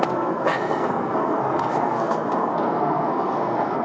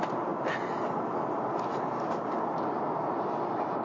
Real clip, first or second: second